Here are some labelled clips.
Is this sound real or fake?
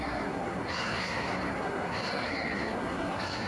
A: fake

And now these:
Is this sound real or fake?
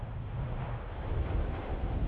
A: real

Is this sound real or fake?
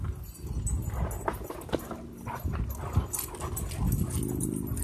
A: real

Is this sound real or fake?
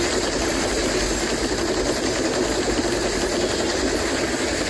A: real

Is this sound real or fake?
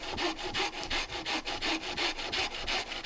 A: real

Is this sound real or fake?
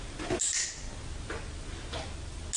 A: real